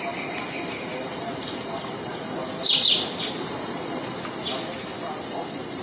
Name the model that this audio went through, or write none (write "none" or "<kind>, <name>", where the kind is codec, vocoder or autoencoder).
vocoder, BigVGAN v2